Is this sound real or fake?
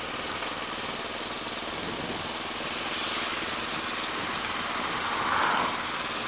real